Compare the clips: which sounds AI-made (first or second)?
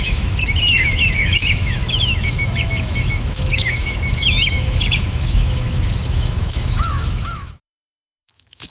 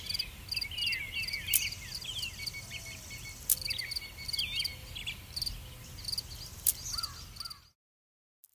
first